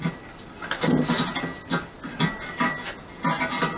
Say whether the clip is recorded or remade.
recorded